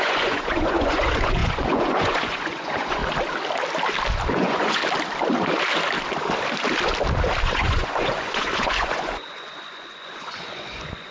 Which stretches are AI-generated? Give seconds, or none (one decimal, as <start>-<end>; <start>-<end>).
0.0-3.0; 4.3-4.8; 7.4-11.1